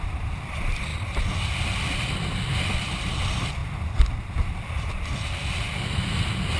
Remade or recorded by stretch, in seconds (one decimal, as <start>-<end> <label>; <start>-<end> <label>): 0.0-6.6 remade